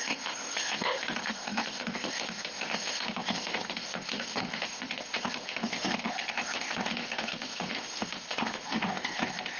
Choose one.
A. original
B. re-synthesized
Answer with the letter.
B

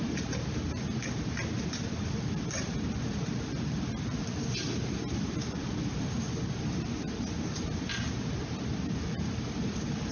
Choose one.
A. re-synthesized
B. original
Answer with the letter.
B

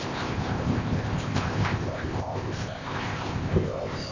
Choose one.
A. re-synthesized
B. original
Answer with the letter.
A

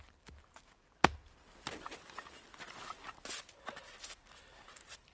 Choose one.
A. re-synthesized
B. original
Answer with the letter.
B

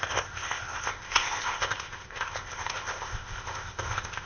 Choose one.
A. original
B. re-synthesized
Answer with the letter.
B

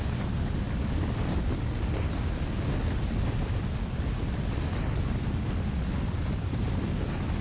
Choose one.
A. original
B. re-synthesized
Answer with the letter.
A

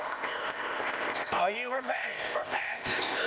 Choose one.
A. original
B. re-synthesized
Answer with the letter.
B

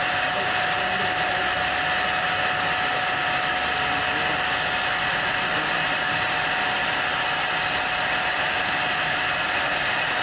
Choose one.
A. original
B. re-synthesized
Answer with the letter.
A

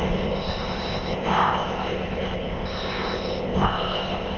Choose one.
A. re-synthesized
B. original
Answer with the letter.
A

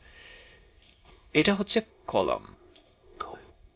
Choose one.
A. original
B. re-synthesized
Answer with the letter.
B